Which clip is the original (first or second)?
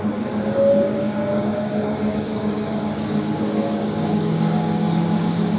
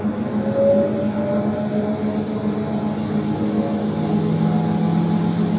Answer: second